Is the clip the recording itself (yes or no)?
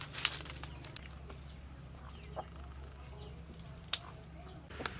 yes